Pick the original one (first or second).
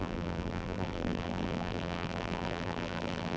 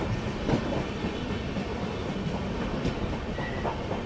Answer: second